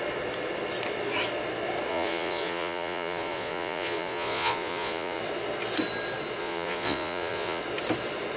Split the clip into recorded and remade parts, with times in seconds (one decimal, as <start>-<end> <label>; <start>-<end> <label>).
0.0-1.9 recorded; 1.9-5.2 remade; 5.2-6.4 recorded; 6.4-7.6 remade; 7.6-8.4 recorded